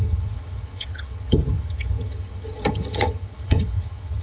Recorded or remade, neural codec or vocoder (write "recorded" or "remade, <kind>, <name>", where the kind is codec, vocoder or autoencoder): remade, vocoder, HiFi-GAN